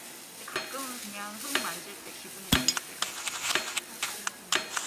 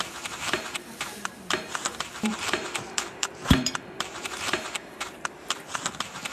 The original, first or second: first